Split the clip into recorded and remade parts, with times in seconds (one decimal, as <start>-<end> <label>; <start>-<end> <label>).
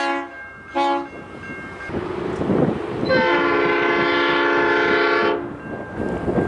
0.0-6.5 recorded